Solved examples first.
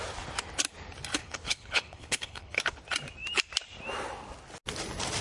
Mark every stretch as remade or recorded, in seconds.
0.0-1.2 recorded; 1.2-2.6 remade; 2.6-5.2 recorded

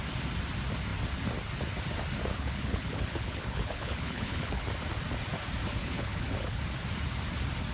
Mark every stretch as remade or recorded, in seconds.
0.0-2.3 recorded; 2.3-4.6 remade; 4.6-5.8 recorded; 5.8-6.6 remade; 6.6-7.7 recorded

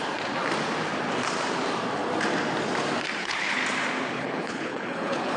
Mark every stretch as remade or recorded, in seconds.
0.0-3.2 recorded; 3.2-3.6 remade; 3.6-4.1 recorded; 4.1-5.4 remade

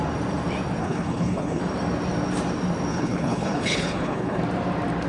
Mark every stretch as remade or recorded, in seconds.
0.0-0.8 recorded; 0.8-1.6 remade; 1.6-2.9 recorded; 2.9-4.4 remade; 4.4-5.1 recorded

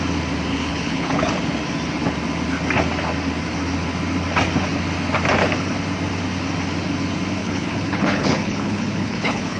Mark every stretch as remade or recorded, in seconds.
0.0-0.5 recorded; 0.5-1.3 remade; 1.3-7.4 recorded; 7.4-9.6 remade